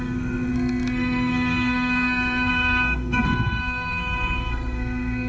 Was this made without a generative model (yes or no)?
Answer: no